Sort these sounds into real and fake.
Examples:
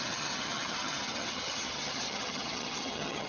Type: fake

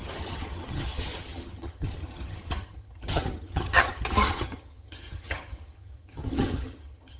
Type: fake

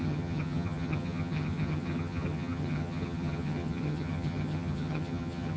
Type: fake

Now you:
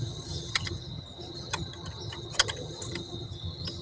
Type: fake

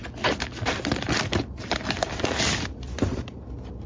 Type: real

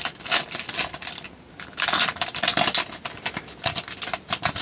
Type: real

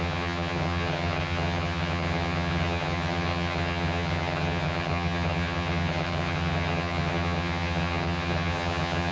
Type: fake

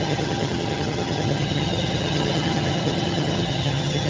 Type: fake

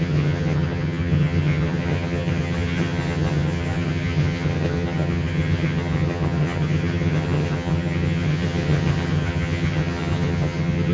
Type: fake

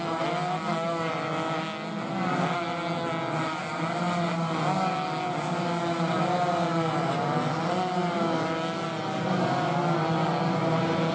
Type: real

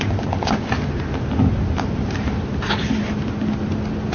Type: real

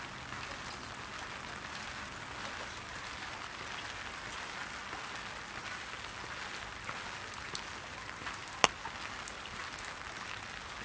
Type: real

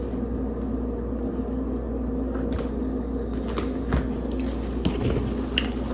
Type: real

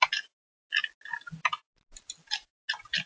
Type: real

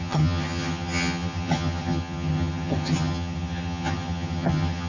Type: fake